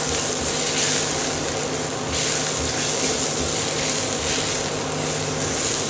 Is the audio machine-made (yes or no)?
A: no